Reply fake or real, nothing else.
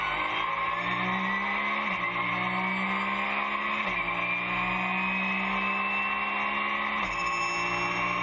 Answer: real